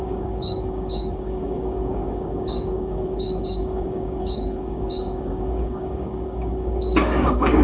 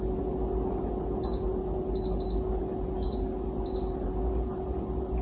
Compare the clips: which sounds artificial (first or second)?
first